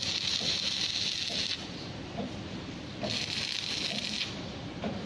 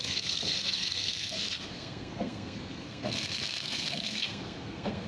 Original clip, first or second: first